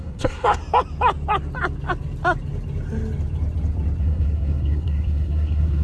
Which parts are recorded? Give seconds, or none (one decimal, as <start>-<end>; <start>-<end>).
0.6-4.0